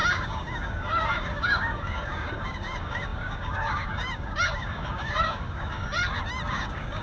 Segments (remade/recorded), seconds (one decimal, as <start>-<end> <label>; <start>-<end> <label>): 0.0-6.0 remade; 6.0-6.5 recorded; 6.5-7.0 remade